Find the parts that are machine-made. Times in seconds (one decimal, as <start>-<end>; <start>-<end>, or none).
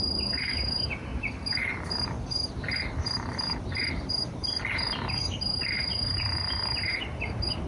0.0-7.7